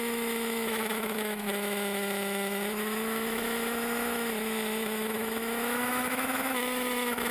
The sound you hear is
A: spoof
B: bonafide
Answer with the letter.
A